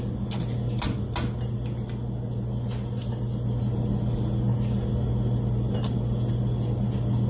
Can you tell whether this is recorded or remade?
recorded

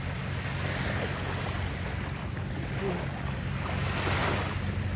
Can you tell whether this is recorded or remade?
recorded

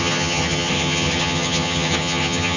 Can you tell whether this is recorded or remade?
remade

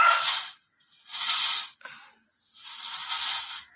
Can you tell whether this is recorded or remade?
recorded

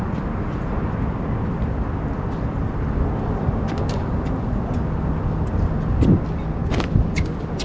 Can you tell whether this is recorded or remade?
recorded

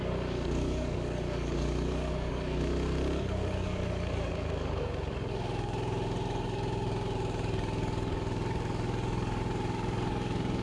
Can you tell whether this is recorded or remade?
remade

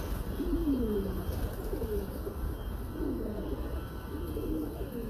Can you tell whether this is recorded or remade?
recorded